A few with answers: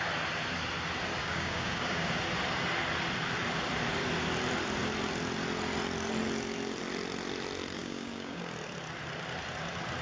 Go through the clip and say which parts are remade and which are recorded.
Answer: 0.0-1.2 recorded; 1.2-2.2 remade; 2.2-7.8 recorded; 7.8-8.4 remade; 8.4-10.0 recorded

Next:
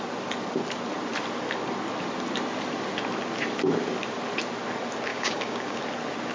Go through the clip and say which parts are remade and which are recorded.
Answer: 0.0-5.1 recorded; 5.1-5.8 remade; 5.8-6.3 recorded

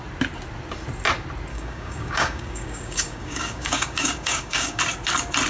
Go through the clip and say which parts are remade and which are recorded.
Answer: 0.0-1.5 recorded; 1.5-4.8 remade; 4.8-5.5 recorded

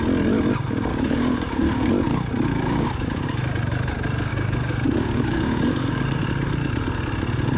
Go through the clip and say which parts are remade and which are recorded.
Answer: 0.0-0.9 recorded; 0.9-1.9 remade; 1.9-2.5 recorded; 2.5-3.4 remade; 3.4-4.3 recorded; 4.3-6.2 remade; 6.2-7.6 recorded

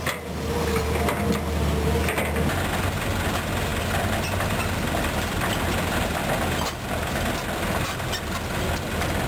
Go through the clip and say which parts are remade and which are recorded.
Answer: 0.0-9.3 recorded

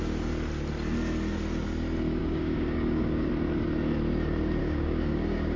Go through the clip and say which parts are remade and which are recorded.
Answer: 0.0-2.2 recorded; 2.2-3.3 remade; 3.3-4.6 recorded; 4.6-5.6 remade

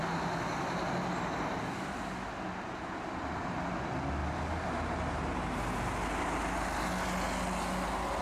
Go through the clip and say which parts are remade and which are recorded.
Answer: 0.0-8.2 recorded

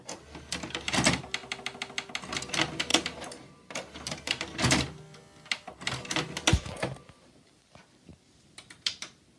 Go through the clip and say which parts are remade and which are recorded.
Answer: 0.0-9.4 recorded